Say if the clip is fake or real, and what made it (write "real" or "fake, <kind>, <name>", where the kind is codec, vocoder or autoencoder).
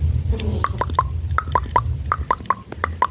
real